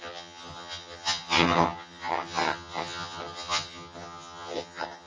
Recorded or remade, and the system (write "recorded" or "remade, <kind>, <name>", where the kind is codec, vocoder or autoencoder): remade, vocoder, HiFi-GAN